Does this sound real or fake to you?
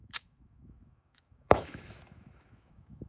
fake